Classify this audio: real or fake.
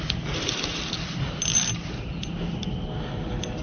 real